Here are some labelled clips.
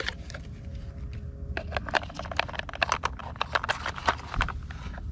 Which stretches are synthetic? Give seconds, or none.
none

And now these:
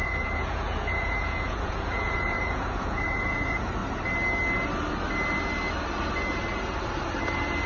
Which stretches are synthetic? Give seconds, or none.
0.0-3.8 (vocoder, Vocos)

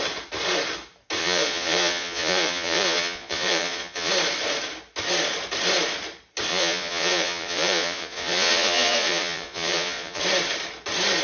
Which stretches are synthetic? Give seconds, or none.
1.2-4.1 (vocoder, Vocos); 6.5-10.2